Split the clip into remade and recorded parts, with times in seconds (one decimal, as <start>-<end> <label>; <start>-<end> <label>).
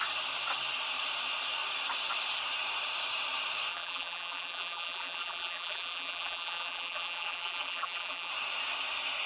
0.0-3.7 recorded; 3.7-8.3 remade; 8.3-9.3 recorded